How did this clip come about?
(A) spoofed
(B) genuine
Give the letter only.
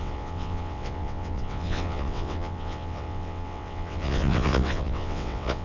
A